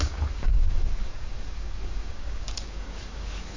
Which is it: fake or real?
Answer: fake